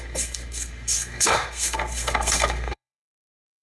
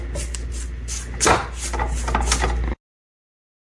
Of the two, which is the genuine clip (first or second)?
second